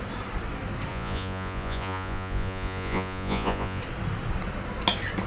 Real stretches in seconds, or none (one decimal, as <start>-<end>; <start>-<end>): 0.0-0.9; 3.8-5.3